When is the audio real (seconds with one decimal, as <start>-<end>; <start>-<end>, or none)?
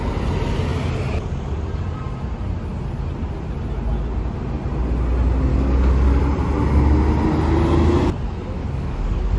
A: 0.0-5.5; 6.2-8.6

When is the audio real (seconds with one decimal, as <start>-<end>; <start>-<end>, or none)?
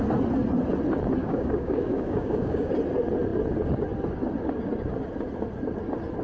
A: 0.0-1.2; 2.7-6.2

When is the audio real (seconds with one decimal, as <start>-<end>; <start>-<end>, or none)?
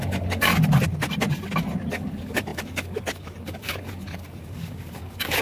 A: 0.5-1.9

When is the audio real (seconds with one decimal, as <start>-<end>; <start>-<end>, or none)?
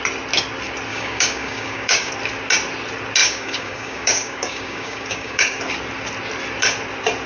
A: 0.0-0.9; 2.1-3.2; 5.6-7.3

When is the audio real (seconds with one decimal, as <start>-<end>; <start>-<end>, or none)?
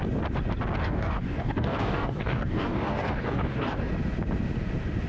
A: 0.0-0.8; 3.9-5.1